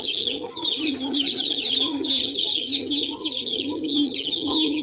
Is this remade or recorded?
remade